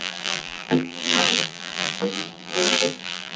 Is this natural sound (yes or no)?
no